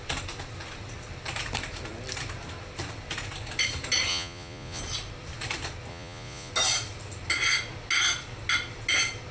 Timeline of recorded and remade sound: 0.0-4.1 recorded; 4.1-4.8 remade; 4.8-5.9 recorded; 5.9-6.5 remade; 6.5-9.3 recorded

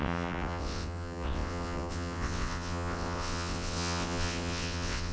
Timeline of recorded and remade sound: 0.0-5.1 remade

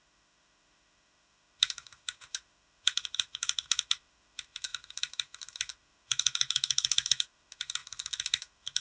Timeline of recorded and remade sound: 0.0-8.8 remade

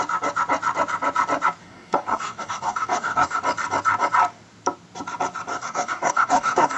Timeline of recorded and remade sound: 0.0-1.6 recorded; 1.6-3.4 remade; 3.4-5.5 recorded; 5.5-6.8 remade